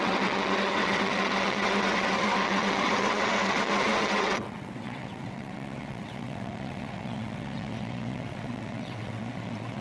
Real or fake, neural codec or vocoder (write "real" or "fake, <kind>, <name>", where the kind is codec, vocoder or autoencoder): fake, vocoder, WaveNeXt